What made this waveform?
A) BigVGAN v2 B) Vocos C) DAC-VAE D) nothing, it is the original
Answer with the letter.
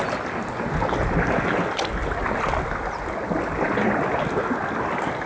D